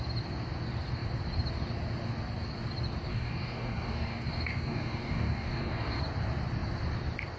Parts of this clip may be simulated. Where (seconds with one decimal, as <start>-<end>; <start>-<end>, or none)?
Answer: 3.1-6.0